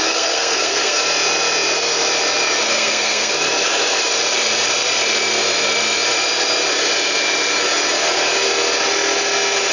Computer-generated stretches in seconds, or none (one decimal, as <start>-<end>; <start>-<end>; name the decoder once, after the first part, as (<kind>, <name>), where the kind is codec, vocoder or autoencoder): 0.0-1.0 (codec, SNAC); 2.7-3.3